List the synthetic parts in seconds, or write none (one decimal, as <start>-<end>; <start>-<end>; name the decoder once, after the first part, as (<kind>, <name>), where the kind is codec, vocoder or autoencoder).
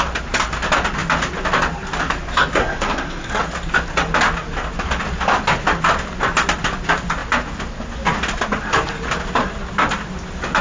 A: 2.6-3.4 (codec, SNAC)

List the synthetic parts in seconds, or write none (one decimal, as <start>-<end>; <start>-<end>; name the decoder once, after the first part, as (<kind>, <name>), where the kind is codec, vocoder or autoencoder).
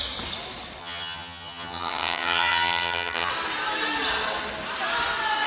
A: 0.8-3.3 (vocoder, HiFi-GAN)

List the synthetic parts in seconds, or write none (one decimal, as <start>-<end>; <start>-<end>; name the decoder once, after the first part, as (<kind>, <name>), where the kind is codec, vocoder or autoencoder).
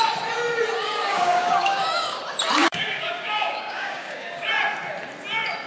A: 0.8-2.2 (codec, DAC); 2.6-4.5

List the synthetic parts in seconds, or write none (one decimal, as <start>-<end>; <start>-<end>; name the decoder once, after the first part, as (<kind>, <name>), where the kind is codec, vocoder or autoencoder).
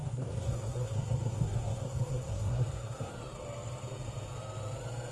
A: 0.0-3.1 (codec, SNAC)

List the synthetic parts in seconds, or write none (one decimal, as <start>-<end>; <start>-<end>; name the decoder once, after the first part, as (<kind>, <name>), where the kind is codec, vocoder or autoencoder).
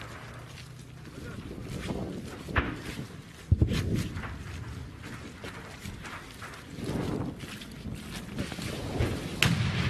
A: none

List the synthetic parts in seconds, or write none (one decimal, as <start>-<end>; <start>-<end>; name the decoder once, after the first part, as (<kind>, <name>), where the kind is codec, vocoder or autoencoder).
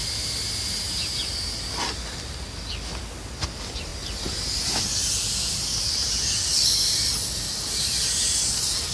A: none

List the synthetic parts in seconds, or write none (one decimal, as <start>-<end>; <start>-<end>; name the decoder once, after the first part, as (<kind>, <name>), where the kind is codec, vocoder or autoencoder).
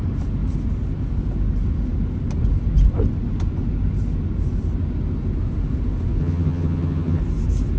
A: 6.2-7.2 (vocoder, HiFi-GAN)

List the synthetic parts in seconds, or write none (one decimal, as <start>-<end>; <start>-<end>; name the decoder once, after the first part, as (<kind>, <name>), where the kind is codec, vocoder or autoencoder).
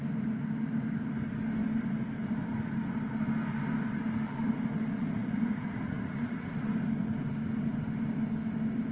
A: 4.9-6.7 (vocoder, Vocos)